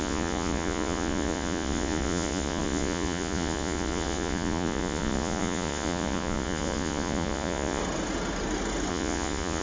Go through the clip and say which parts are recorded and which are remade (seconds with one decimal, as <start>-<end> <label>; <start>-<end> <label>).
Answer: 0.0-7.8 remade; 7.8-8.9 recorded; 8.9-9.6 remade